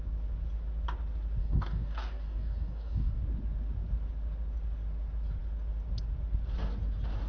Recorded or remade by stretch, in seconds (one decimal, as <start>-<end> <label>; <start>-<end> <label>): 0.0-1.4 recorded; 1.4-3.2 remade; 3.2-7.3 recorded